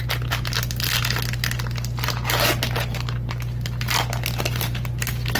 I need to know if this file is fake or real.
real